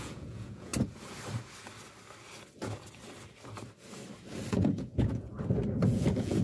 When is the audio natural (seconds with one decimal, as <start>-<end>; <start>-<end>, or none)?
0.7-4.5; 5.3-5.8